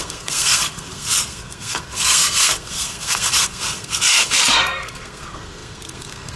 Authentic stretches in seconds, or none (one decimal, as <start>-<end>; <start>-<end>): none